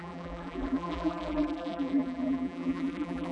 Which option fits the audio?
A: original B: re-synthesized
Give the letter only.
B